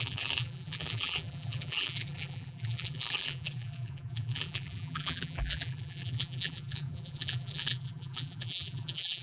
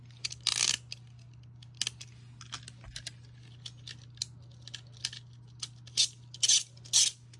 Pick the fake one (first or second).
first